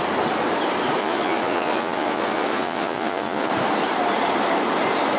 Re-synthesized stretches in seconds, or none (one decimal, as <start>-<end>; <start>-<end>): 1.0-3.5